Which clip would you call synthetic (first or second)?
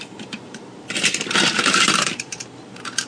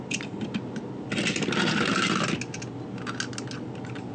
first